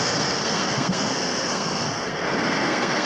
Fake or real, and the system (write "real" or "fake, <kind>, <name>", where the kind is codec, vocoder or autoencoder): fake, codec, SNAC